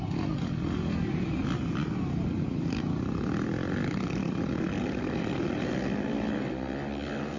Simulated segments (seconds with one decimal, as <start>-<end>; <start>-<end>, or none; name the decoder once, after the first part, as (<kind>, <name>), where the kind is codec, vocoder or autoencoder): 1.4-4.4 (vocoder, BigVGAN v2)